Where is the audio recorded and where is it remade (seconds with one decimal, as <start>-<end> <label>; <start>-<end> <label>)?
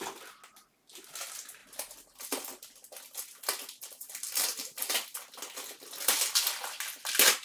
0.0-7.4 recorded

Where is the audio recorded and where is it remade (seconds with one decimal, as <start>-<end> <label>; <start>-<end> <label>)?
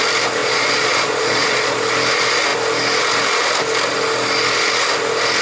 0.0-0.4 recorded; 0.4-1.8 remade; 1.8-5.4 recorded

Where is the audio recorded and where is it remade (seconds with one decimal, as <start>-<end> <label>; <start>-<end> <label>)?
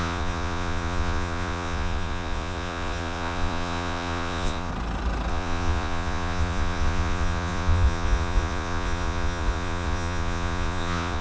0.0-4.7 remade; 4.7-5.3 recorded; 5.3-11.2 remade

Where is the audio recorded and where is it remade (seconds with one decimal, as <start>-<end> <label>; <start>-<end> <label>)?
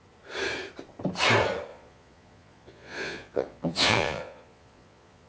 0.0-1.7 recorded; 1.7-5.3 remade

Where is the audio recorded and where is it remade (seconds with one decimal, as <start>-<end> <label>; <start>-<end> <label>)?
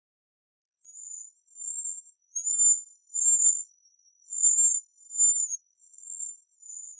0.0-5.7 recorded; 5.7-6.2 remade; 6.2-7.0 recorded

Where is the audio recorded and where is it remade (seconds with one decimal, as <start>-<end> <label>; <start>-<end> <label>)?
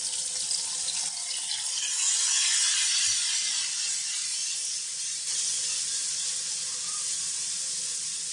0.0-1.9 recorded; 1.9-2.7 remade; 2.7-8.3 recorded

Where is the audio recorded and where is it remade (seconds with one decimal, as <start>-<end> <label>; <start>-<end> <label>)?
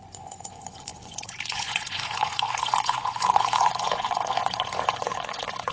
0.0-5.7 remade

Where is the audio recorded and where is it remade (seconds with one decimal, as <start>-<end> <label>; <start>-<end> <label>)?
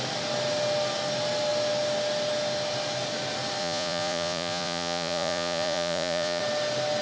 0.0-3.6 recorded; 3.6-6.4 remade; 6.4-7.0 recorded